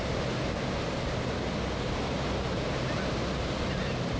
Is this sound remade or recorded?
recorded